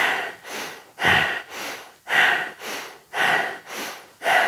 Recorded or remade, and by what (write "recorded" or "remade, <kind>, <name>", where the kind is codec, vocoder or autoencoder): recorded